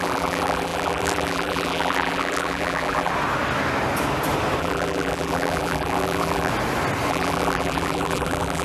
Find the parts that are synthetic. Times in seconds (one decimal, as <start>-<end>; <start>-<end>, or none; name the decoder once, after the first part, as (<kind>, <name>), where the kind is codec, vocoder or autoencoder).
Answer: 0.0-3.1 (vocoder, BigVGAN v2); 4.6-6.5; 7.1-8.6